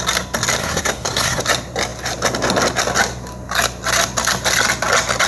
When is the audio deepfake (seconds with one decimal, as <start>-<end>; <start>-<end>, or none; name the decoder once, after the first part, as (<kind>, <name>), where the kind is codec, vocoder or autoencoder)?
0.6-1.4 (codec, SNAC)